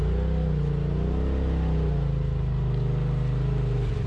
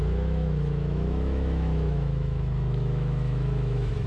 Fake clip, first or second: second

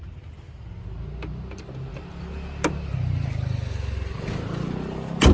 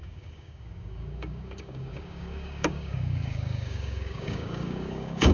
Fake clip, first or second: second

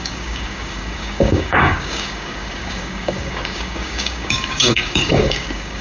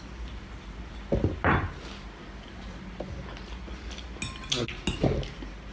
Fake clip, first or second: first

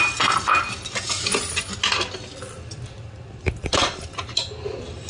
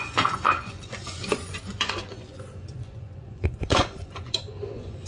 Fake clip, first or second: second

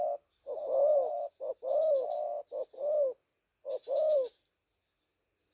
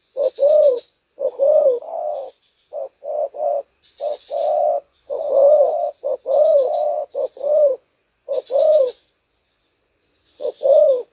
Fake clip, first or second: second